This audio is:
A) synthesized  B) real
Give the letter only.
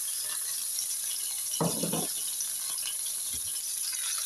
B